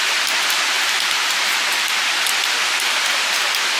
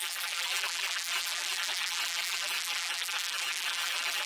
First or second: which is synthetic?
second